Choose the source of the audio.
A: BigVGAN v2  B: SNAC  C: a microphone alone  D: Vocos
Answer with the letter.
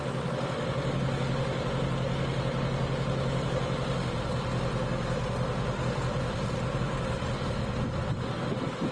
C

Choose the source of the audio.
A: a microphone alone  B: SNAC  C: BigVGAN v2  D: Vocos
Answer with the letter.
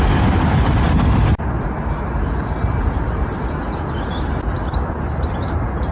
A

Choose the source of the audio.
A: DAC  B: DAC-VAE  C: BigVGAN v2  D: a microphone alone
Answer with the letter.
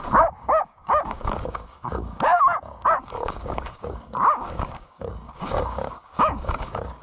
A